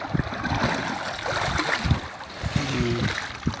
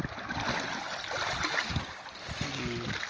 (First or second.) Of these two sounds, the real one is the first